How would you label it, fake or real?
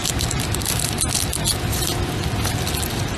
real